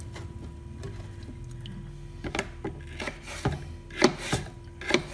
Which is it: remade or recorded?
recorded